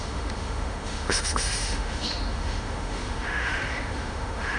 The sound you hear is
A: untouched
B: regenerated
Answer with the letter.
B